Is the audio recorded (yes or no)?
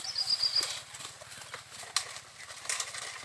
yes